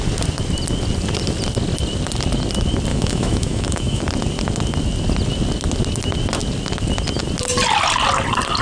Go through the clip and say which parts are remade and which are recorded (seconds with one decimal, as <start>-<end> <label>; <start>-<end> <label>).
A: 0.0-2.9 recorded; 2.9-4.0 remade; 4.0-8.6 recorded